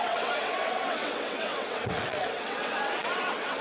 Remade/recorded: remade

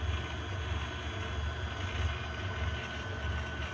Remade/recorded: recorded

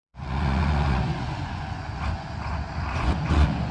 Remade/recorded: remade